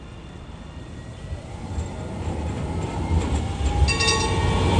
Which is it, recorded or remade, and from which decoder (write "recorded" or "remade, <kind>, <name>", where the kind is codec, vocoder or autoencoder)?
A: recorded